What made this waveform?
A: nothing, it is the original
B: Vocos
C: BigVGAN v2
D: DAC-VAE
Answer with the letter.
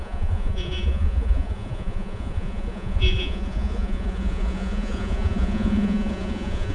B